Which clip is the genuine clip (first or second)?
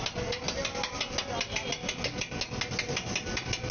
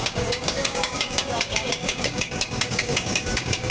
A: first